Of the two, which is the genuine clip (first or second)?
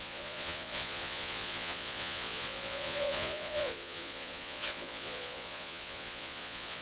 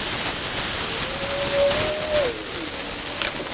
second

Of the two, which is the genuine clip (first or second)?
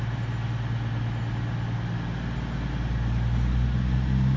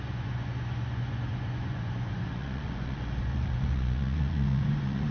first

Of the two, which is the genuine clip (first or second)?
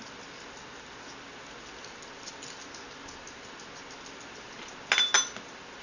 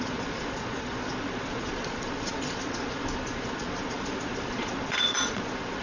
first